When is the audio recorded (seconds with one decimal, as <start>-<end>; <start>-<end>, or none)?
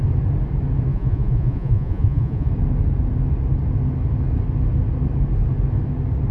0.0-0.9; 2.5-6.3